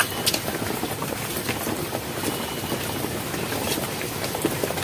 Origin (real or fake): fake